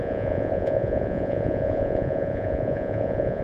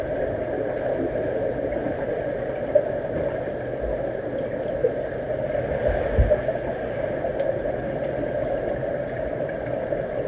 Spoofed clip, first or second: first